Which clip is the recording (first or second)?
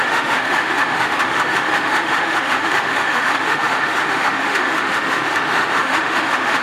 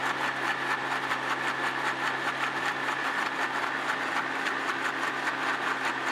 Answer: second